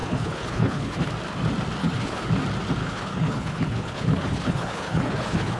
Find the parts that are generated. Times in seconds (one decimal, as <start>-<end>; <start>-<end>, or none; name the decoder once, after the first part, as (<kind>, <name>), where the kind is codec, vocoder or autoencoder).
0.0-1.1 (codec, HILCodec); 1.8-2.3; 2.8-5.6